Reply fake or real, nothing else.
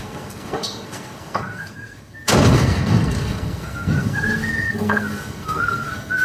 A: fake